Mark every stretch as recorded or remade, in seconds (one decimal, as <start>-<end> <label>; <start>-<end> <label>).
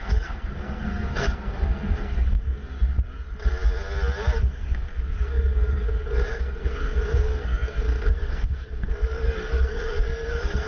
0.0-2.6 remade; 2.6-4.4 recorded; 4.4-10.7 remade